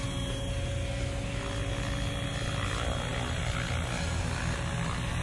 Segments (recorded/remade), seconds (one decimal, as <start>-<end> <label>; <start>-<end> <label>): 0.0-5.2 recorded